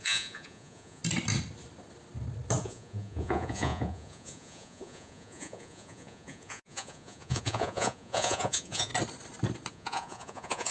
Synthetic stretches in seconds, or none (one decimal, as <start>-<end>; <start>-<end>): 0.0-1.0; 2.6-8.9; 9.7-10.7

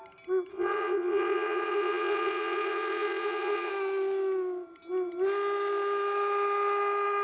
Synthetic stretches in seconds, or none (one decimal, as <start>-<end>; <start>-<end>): 0.5-3.7

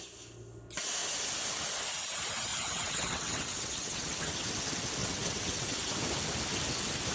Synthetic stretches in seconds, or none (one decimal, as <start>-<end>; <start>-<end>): 2.5-4.4; 5.0-5.9

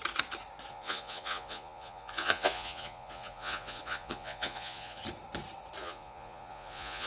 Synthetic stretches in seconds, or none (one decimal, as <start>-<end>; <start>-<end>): 0.7-5.0; 5.8-7.1

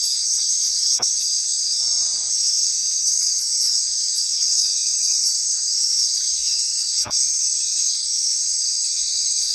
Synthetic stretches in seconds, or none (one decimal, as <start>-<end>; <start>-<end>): 0.0-1.8; 2.3-9.5

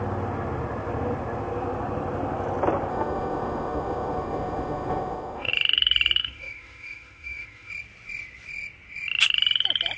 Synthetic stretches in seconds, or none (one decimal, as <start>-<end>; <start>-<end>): 2.9-5.5; 6.2-7.7

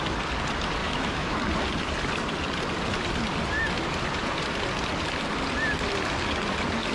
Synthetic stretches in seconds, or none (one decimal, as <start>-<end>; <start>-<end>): 0.8-1.4

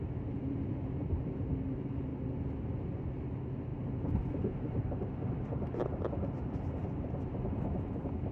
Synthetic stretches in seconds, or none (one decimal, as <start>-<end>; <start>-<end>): 3.7-4.8